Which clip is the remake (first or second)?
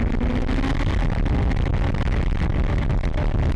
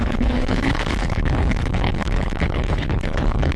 second